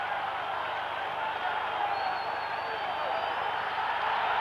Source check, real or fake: real